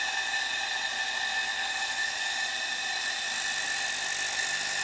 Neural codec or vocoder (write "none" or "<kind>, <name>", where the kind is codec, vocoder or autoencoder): none